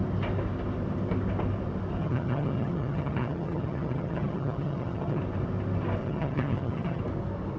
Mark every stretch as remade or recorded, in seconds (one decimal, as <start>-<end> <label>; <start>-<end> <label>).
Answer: 0.0-2.0 recorded; 2.0-5.2 remade; 5.2-6.0 recorded; 6.0-7.0 remade; 7.0-7.6 recorded